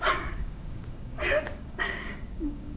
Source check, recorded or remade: remade